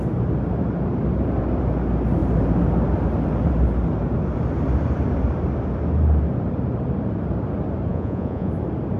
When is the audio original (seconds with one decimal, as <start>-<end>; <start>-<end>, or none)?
0.0-7.9; 8.5-9.0